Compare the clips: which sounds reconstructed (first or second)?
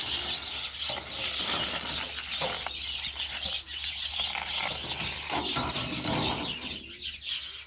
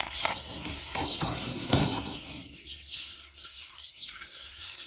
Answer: second